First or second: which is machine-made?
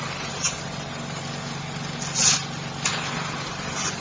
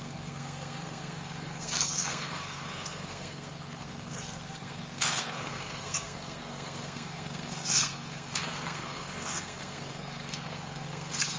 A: second